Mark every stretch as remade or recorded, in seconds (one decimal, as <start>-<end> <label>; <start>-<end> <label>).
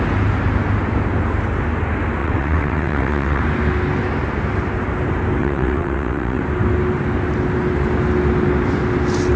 0.0-2.2 recorded; 2.2-3.4 remade; 3.4-5.4 recorded; 5.4-6.4 remade; 6.4-9.4 recorded